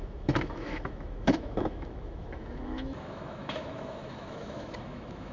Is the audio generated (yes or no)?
yes